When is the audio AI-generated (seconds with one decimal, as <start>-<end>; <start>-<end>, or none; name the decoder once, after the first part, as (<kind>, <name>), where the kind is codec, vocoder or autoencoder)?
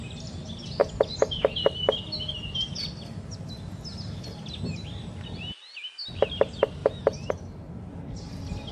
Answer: none